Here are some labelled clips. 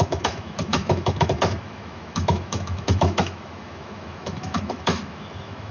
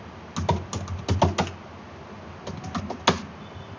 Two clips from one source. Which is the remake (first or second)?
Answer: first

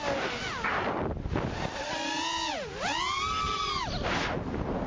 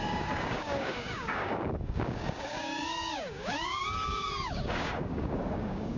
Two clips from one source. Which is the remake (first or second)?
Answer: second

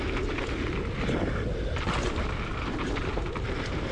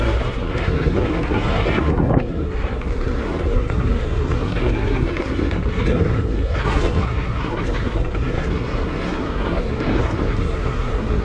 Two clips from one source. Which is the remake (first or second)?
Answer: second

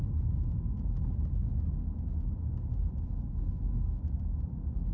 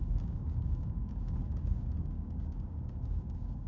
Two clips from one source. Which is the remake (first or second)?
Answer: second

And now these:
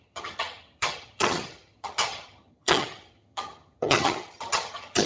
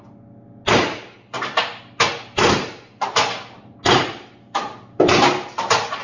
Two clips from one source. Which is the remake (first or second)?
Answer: first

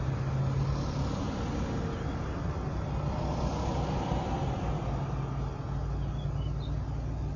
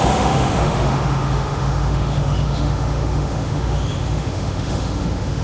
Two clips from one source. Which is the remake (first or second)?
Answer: second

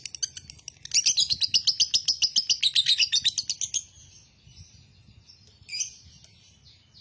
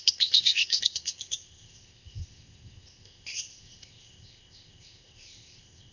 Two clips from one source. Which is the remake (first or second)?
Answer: second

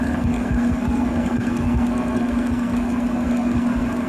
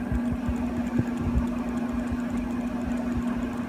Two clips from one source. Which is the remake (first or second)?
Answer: first